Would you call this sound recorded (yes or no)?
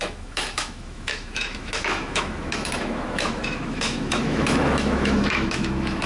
no